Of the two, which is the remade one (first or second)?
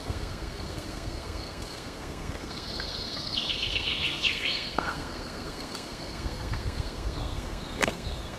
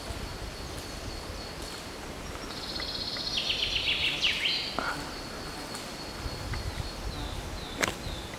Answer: first